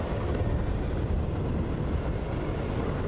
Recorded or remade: recorded